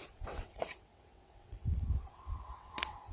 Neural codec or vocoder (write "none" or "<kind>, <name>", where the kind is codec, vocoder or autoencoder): vocoder, WaveNeXt